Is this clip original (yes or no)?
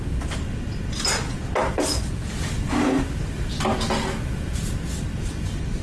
yes